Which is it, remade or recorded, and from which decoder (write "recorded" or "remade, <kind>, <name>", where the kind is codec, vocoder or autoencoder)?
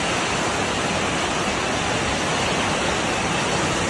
recorded